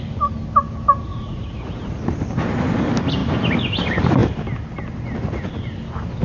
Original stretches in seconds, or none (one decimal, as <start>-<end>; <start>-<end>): 0.0-1.1; 2.0-6.2